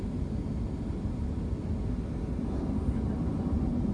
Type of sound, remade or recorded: recorded